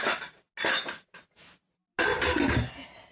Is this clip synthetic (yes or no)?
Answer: no